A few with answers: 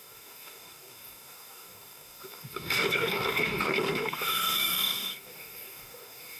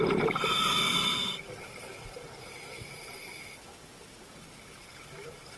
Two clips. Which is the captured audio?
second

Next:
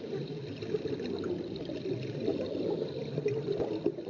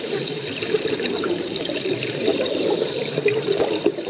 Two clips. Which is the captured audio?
first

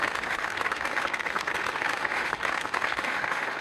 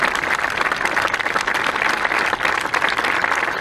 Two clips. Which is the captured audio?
second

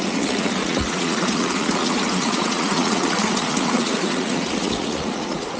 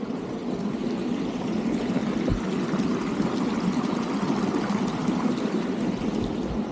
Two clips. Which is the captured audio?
second